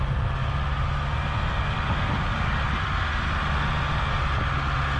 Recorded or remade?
recorded